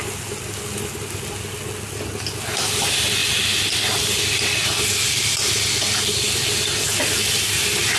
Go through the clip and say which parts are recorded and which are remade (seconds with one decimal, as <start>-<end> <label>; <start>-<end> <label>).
0.0-8.0 recorded